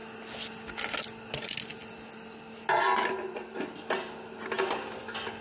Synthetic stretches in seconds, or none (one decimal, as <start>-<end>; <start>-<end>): none